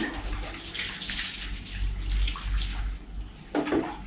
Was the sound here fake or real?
real